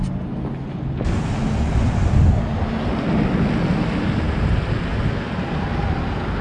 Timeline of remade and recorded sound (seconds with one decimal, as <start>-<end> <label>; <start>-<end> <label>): 0.0-6.4 recorded